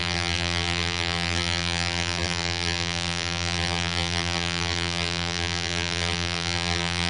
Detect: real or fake fake